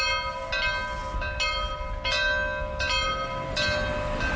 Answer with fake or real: real